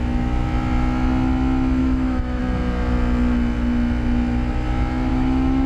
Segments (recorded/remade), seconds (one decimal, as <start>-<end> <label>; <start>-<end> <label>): 0.0-1.8 recorded; 1.8-2.4 remade; 2.4-5.1 recorded; 5.1-5.7 remade